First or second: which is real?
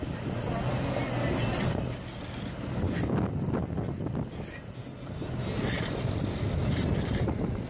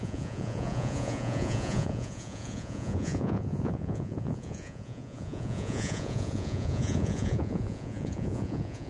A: first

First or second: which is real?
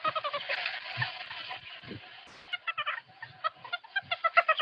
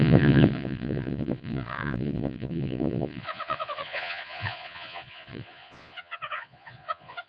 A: first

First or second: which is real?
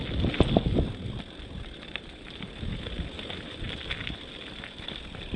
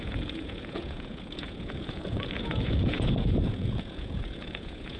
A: first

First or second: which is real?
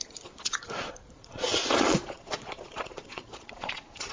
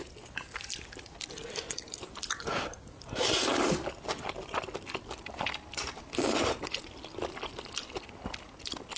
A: second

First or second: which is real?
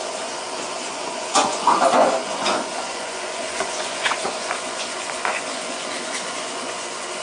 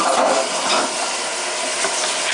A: second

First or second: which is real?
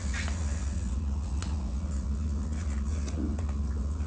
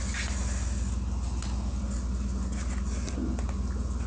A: second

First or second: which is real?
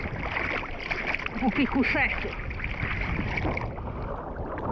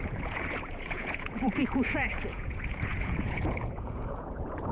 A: first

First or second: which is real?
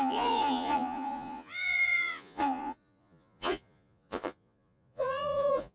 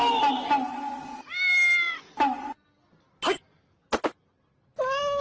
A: second